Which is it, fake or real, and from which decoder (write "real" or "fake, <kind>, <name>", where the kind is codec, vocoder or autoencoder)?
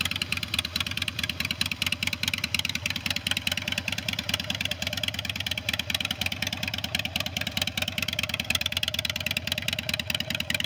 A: real